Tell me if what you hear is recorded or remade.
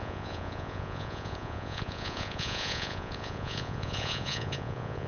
remade